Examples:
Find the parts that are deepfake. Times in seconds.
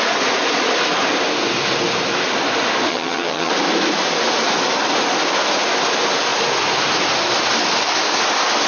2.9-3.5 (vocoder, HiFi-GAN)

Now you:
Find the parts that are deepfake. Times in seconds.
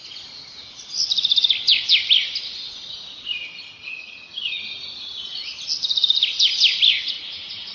3.5-4.6 (vocoder, HiFi-GAN)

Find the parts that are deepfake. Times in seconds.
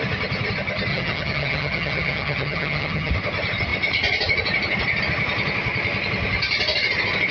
0.9-3.1 (vocoder, HiFi-GAN)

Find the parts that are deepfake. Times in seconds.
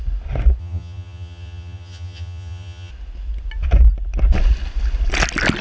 0.6-2.9 (vocoder, HiFi-GAN)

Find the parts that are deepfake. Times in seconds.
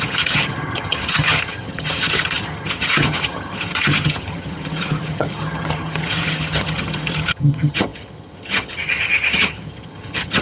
0.0-10.4 (vocoder, HiFi-GAN)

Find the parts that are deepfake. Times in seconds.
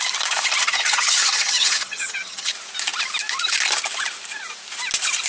0.6-2.5 (vocoder, HiFi-GAN)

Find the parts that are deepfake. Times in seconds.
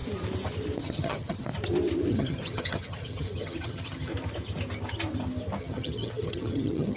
0.8-1.5 (vocoder, HiFi-GAN); 2.1-4.1; 5.6-7.0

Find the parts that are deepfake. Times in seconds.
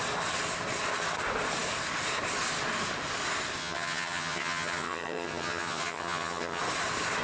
3.6-6.6 (vocoder, HiFi-GAN)